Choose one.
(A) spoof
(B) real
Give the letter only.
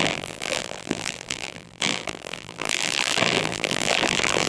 A